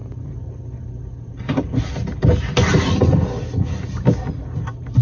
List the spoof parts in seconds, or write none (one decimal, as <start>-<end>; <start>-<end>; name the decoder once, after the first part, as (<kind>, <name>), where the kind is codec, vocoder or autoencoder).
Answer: none